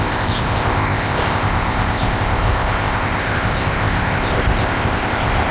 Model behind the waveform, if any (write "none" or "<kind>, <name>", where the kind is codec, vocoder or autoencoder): codec, ZipCodec